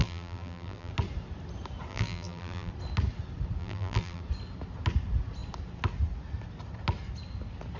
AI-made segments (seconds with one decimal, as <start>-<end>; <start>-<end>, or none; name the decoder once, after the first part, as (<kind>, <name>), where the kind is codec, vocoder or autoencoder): 0.0-0.9 (vocoder, BigVGAN v2); 1.9-2.7; 3.6-4.2